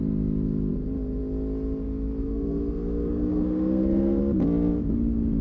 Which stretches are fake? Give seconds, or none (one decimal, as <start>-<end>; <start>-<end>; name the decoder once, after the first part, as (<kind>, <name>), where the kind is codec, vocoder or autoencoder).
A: 2.2-4.2 (codec, SNAC)

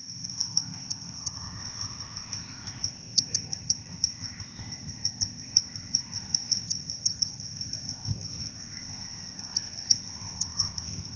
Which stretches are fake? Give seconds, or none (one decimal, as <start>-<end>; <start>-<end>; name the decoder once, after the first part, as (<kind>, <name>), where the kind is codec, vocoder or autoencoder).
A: 0.0-11.2 (codec, ZipCodec)

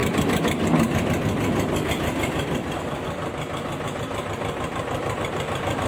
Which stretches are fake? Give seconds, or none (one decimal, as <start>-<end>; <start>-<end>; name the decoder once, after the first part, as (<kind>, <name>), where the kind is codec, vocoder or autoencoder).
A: 1.9-5.9 (vocoder, BigVGAN v2)

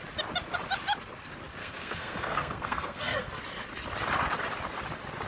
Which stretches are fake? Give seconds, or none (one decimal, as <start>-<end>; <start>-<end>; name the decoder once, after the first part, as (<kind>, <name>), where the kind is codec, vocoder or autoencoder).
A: 1.6-3.4 (codec, SNAC)

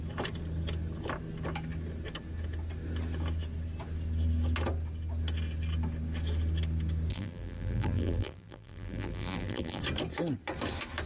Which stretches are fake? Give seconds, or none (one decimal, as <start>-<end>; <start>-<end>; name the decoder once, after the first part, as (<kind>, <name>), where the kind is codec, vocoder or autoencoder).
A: 7.1-9.8 (vocoder, BigVGAN v2)

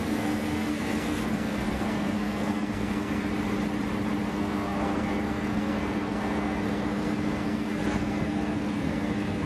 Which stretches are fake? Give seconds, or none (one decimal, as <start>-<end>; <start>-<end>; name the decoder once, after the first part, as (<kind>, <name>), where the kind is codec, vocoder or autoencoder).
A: 0.0-3.2 (codec, SNAC); 4.3-9.5

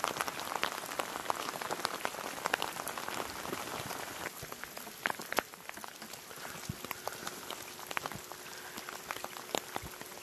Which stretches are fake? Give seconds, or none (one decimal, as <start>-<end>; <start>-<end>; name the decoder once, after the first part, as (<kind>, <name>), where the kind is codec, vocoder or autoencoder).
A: none